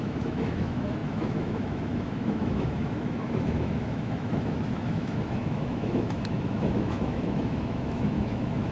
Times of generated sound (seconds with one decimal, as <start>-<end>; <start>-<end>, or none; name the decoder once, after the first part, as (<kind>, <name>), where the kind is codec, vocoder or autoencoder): 0.0-8.7 (autoencoder, DAC-VAE)